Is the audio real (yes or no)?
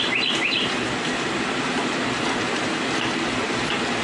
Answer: no